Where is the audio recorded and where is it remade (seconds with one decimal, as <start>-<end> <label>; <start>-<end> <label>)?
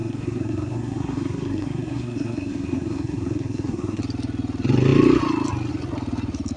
0.0-4.0 remade; 4.0-6.6 recorded